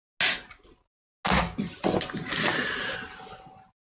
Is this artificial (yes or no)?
no